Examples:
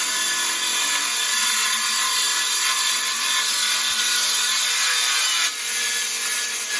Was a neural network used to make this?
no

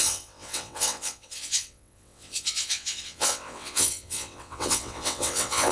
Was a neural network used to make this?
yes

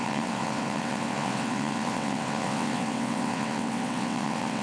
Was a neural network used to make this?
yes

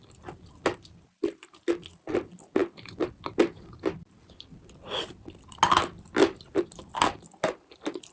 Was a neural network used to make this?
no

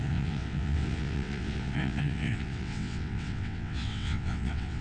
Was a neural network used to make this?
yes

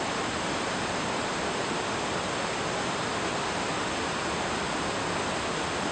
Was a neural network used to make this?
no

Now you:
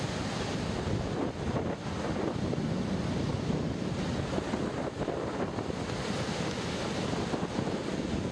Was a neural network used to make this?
no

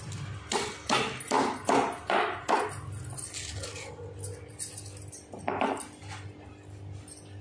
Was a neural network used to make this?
no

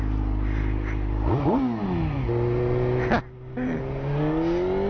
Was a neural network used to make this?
no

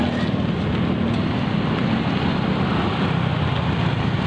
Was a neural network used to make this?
no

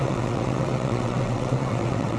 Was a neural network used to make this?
yes